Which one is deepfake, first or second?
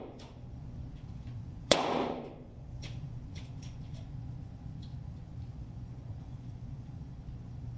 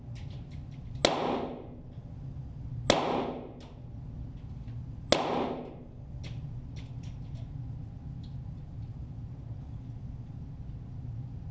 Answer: first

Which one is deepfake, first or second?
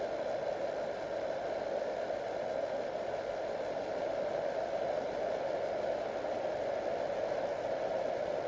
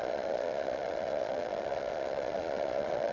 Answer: second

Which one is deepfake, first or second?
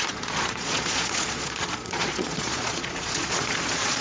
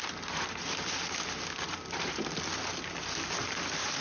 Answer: first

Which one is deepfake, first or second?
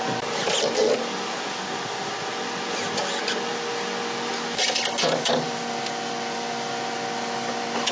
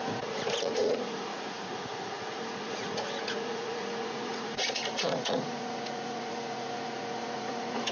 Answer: second